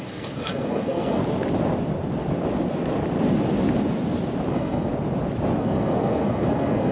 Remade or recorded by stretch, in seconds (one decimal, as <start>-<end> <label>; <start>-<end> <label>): 0.0-1.2 remade; 1.2-4.5 recorded; 4.5-4.9 remade; 4.9-5.6 recorded; 5.6-6.9 remade

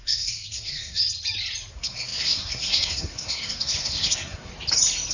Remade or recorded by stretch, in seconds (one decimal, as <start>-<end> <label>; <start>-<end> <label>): 0.0-1.0 remade; 1.0-1.7 recorded; 1.7-4.5 remade; 4.5-5.1 recorded

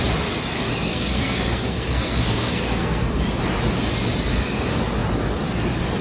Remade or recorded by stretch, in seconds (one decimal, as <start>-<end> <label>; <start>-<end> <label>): 0.0-0.9 recorded; 0.9-3.2 remade; 3.2-6.0 recorded

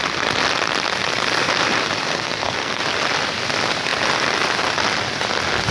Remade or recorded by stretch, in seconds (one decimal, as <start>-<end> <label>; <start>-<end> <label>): 0.0-2.0 recorded; 2.0-2.8 remade; 2.8-5.7 recorded

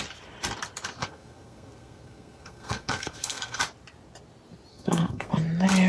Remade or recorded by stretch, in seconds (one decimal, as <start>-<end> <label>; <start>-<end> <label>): 0.0-1.0 recorded; 1.0-3.6 remade; 3.6-4.7 recorded; 4.7-5.3 remade; 5.3-5.9 recorded

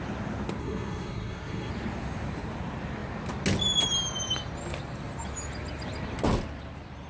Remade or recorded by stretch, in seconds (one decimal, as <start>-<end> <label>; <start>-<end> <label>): 0.0-0.6 recorded; 0.6-1.7 remade; 1.7-7.1 recorded

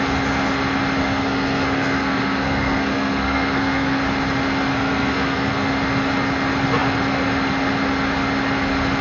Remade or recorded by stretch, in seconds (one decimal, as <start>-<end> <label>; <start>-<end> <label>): 0.0-1.0 recorded; 1.0-4.0 remade; 4.0-4.7 recorded; 4.7-5.7 remade; 5.7-9.0 recorded